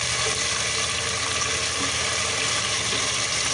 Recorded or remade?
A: recorded